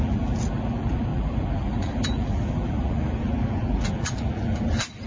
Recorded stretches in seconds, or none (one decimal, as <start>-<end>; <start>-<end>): none